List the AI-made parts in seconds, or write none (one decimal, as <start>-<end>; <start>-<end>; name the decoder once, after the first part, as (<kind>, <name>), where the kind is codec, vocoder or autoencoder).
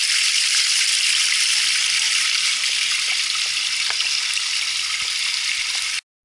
none